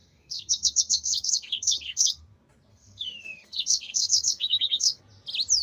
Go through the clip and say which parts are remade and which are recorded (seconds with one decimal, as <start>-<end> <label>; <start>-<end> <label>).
0.0-2.2 remade; 2.2-2.7 recorded; 2.7-5.0 remade; 5.0-5.6 recorded